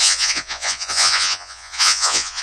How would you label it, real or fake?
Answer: fake